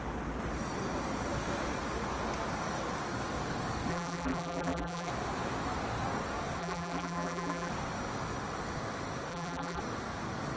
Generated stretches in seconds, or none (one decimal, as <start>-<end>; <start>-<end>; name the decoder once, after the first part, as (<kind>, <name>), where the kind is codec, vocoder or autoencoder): 3.9-5.1 (vocoder, BigVGAN v2); 6.6-7.7; 9.3-9.8